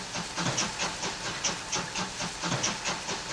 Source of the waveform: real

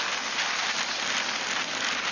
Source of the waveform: real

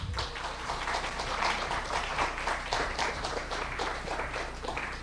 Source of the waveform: fake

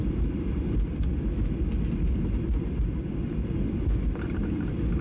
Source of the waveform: real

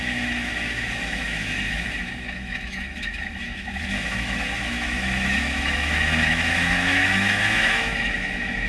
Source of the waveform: fake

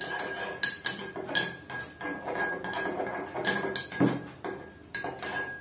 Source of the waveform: real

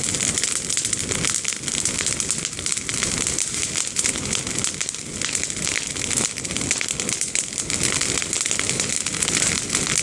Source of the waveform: real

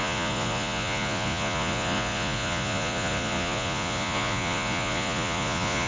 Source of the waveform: fake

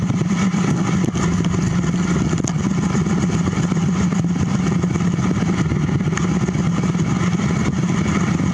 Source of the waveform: real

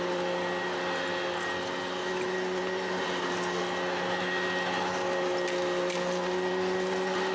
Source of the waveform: real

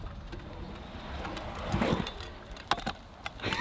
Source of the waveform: real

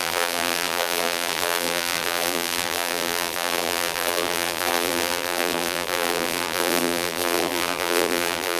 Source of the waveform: fake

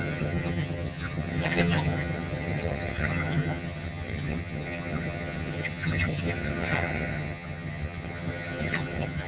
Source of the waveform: fake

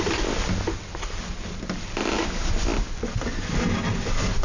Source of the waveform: real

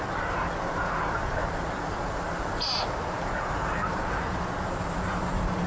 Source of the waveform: fake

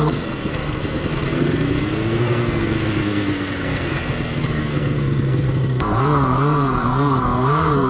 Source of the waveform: fake